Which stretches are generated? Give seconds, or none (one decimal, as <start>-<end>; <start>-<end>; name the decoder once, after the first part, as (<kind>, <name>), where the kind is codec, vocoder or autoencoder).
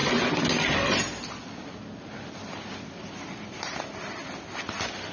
none